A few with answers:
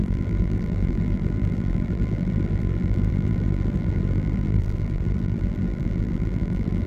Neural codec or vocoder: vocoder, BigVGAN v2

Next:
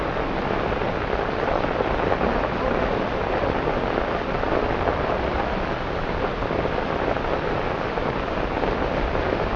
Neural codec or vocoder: none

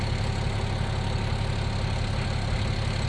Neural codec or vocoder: none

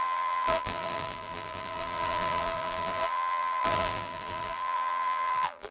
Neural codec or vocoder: vocoder, BigVGAN v2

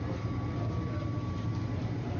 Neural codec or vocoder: none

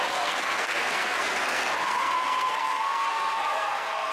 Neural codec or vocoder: codec, SNAC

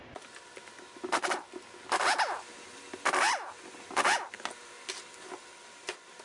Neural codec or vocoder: none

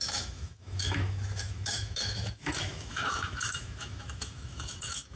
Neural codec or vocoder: autoencoder, DAC-VAE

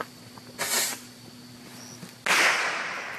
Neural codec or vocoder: none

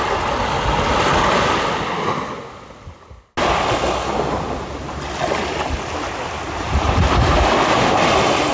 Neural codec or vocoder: none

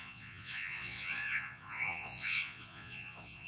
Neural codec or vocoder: vocoder, Vocos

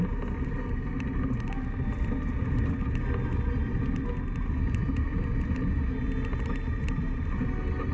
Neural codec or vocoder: none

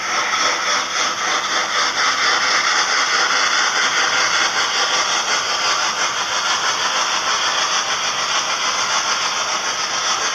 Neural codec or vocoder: none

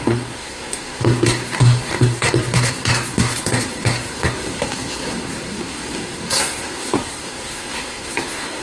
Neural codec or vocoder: codec, SNAC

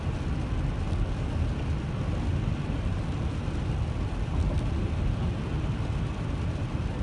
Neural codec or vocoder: none